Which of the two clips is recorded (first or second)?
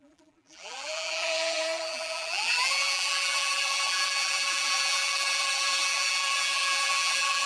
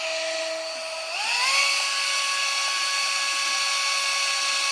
second